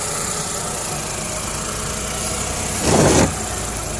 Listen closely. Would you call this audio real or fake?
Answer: real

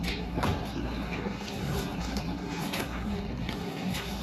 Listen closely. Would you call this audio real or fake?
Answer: fake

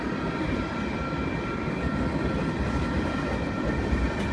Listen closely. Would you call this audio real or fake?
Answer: real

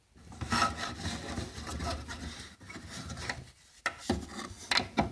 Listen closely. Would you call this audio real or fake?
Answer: real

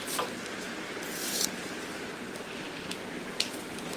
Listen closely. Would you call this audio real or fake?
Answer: real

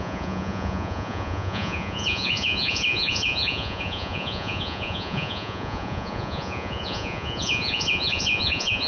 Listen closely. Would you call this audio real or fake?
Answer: fake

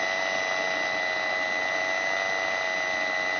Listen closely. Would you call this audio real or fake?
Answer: real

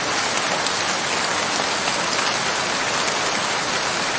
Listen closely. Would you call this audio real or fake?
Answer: real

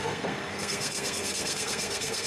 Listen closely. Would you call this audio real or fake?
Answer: fake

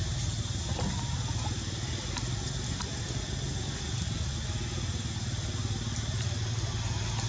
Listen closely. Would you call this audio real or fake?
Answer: real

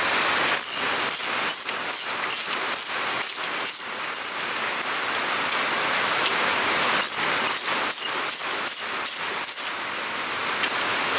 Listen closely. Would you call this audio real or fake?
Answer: real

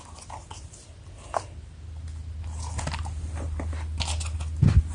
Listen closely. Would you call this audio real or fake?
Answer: real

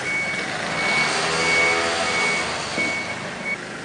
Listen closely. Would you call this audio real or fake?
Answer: real